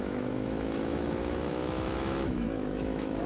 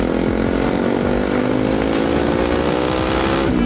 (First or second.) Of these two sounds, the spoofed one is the first